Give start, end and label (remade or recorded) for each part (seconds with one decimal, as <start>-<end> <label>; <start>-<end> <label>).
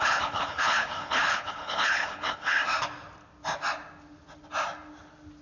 0.0-2.6 remade; 2.6-5.4 recorded